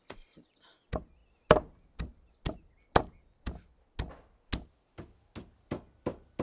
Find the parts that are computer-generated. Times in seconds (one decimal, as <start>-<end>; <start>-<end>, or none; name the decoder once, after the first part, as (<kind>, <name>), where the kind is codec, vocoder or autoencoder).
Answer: none